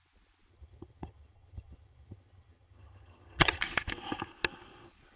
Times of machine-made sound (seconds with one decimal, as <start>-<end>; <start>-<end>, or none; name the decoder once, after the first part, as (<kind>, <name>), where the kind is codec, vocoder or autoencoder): 0.5-3.6 (vocoder, HiFi-GAN)